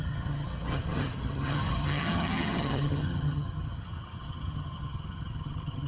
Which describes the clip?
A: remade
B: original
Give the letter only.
A